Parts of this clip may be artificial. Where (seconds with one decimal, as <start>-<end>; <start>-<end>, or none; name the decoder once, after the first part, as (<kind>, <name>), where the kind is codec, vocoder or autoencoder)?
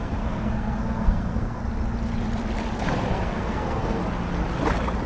0.0-1.6 (codec, SNAC); 3.1-4.0